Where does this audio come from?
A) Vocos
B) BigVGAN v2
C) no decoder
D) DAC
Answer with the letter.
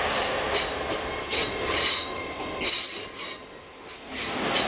C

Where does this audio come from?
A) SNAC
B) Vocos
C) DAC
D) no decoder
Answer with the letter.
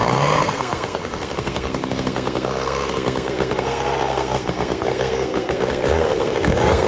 A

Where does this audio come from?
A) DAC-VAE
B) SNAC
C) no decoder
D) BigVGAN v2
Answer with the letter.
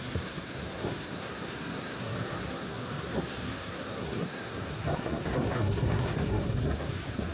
B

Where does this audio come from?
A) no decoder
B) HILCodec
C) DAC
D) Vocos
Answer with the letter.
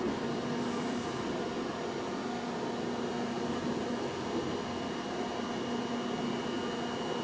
A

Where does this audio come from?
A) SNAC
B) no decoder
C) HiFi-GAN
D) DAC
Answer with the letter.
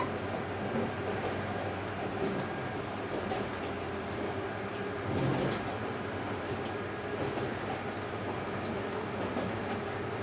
B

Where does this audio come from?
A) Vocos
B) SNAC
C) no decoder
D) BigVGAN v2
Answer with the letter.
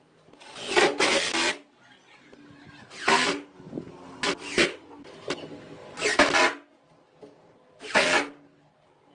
C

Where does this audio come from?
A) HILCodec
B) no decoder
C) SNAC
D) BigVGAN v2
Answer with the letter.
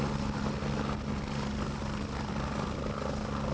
B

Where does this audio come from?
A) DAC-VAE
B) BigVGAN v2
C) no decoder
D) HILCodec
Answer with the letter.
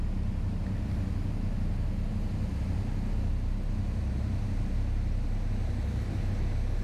C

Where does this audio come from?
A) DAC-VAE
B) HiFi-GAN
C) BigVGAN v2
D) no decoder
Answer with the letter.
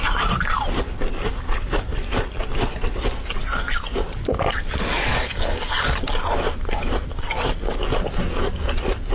D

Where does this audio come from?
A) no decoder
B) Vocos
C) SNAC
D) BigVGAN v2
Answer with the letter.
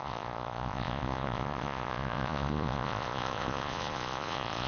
B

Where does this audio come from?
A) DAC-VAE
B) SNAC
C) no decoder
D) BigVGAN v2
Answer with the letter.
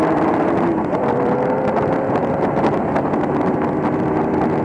D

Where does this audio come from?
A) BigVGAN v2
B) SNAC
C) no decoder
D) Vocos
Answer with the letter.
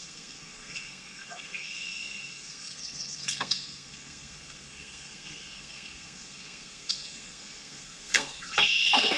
B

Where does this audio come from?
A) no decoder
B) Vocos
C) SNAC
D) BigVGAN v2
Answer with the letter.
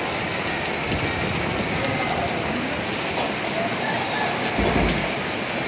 A